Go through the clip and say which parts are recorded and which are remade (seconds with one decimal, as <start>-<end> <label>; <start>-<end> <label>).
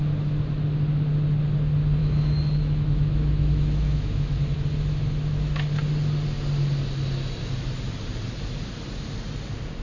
0.0-2.0 recorded; 2.0-5.7 remade; 5.7-9.8 recorded